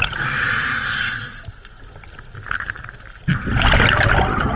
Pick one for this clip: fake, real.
real